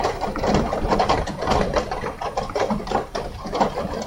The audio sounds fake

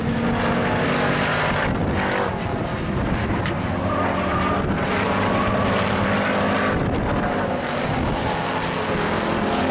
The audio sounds real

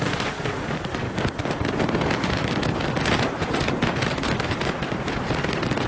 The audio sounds real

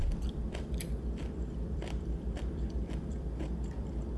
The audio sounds fake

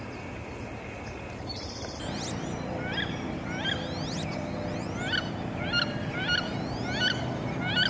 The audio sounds real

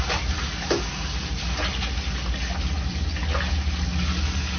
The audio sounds real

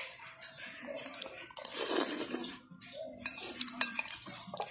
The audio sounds fake